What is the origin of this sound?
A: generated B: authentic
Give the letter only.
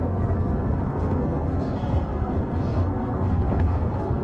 A